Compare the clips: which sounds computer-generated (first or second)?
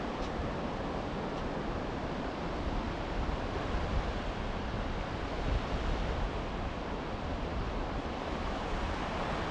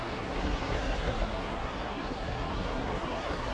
second